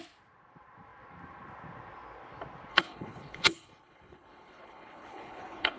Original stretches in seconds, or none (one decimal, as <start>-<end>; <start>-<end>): 0.0-2.7